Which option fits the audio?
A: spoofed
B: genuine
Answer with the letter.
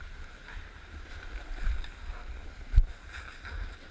B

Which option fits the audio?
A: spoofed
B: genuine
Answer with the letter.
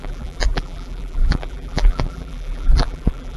A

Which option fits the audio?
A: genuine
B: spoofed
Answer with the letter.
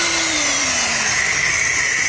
B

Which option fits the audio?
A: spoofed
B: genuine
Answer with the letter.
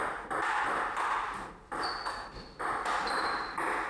B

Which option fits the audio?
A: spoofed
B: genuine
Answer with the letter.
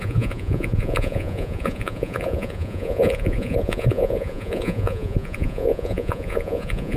A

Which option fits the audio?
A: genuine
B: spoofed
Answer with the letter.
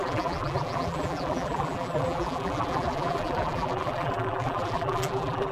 B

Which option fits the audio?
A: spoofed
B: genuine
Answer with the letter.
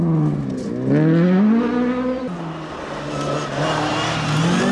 B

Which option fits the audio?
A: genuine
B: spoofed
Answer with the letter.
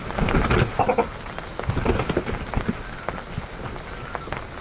A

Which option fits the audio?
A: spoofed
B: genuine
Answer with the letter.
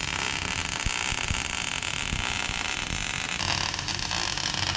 B